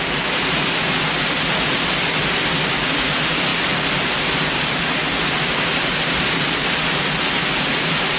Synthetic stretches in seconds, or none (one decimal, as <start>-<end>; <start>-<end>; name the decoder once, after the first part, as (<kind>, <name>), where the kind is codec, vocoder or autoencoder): none